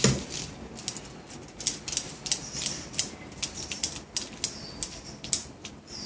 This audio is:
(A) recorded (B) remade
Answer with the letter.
A